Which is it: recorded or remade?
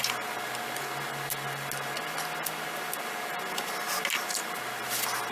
recorded